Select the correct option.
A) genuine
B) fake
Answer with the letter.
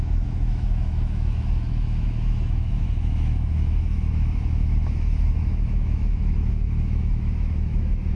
B